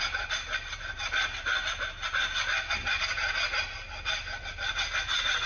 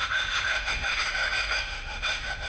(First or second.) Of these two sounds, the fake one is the second